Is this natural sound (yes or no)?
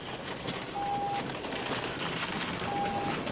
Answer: yes